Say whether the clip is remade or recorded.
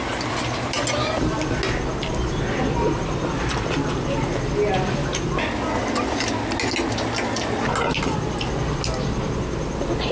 recorded